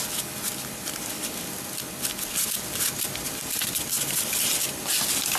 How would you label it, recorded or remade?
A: recorded